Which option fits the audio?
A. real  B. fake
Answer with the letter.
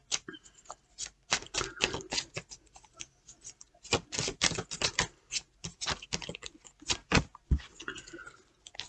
A